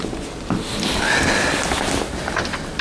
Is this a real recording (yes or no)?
yes